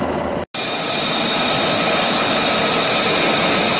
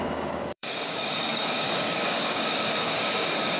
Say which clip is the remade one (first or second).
second